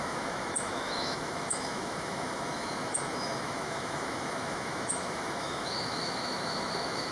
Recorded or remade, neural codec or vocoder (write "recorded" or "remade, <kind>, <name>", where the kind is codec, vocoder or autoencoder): remade, autoencoder, DAC-VAE